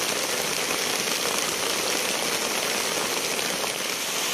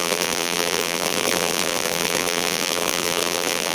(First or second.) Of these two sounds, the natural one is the first